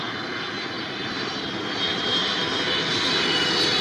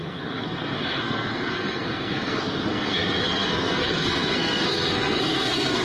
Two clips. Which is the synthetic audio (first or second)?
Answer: second